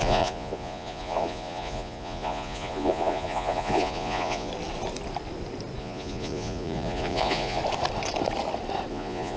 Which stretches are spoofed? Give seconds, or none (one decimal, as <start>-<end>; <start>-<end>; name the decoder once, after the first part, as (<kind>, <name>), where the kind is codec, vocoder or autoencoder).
0.0-4.5 (vocoder, Vocos); 5.8-7.6; 8.9-9.4